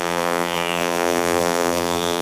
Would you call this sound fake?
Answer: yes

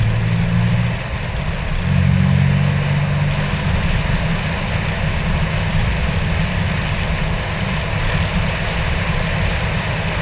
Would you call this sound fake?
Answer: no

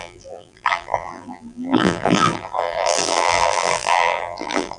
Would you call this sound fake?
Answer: yes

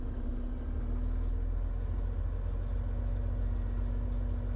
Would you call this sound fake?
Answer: no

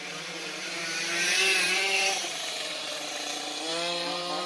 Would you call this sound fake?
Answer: yes